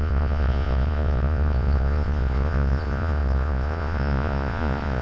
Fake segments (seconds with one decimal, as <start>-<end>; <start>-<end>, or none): 0.0-5.0